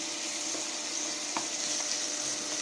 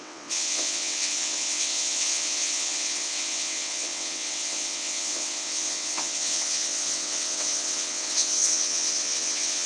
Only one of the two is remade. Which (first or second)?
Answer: second